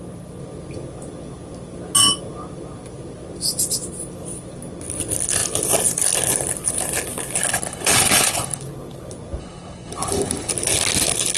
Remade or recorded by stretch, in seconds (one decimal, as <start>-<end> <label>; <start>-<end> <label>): 0.0-7.4 recorded; 7.4-8.6 remade; 8.6-9.4 recorded; 9.4-10.5 remade; 10.5-11.4 recorded